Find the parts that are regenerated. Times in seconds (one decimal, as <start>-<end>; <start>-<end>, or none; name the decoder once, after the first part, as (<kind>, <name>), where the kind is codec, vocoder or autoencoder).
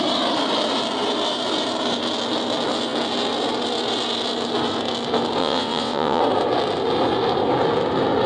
5.4-6.2 (vocoder, WaveNeXt)